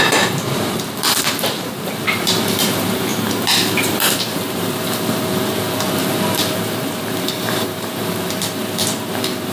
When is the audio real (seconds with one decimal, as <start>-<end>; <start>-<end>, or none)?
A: none